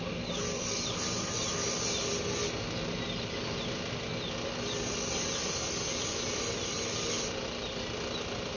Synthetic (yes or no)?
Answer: no